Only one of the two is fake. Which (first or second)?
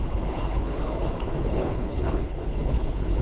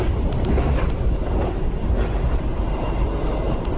first